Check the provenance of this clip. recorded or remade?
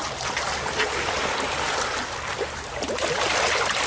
recorded